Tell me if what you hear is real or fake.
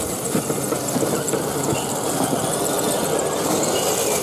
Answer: fake